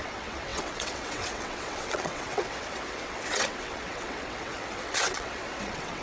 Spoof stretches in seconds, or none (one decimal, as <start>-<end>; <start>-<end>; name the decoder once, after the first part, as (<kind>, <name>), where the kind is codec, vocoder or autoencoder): 0.0-6.0 (vocoder, WaveNeXt)